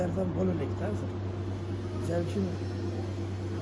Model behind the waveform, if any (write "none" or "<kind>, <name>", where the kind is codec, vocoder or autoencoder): none